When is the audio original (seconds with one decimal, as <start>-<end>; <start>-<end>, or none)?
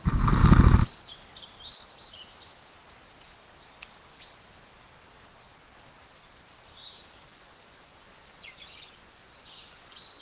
0.0-7.3